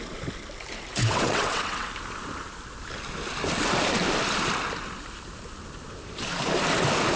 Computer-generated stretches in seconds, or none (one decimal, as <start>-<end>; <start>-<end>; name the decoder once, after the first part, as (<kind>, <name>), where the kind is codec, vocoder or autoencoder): 1.0-1.9 (vocoder, WaveNeXt)

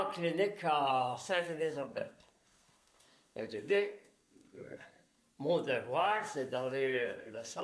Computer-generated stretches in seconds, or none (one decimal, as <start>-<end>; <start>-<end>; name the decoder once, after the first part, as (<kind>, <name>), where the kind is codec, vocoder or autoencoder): 0.9-5.2 (codec, SNAC); 6.0-7.6

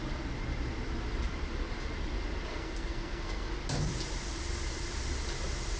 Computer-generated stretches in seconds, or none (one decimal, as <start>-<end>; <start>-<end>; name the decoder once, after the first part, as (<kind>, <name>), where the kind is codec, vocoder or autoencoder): 2.5-3.5 (codec, SNAC)

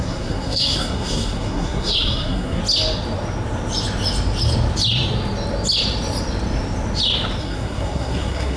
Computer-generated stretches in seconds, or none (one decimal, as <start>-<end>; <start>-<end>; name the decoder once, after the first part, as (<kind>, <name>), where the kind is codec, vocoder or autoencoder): 0.0-2.6 (codec, SNAC); 7.4-8.6

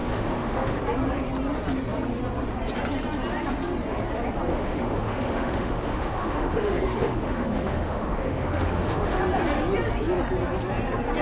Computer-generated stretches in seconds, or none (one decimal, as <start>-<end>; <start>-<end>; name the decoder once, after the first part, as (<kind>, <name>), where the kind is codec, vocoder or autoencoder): 0.0-0.8 (autoencoder, DAC-VAE); 4.5-9.2

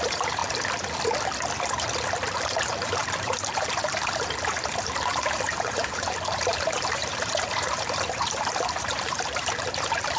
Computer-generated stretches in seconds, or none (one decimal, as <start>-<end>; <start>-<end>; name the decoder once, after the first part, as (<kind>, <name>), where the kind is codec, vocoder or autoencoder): 0.0-0.4 (vocoder, BigVGAN v2); 2.3-10.2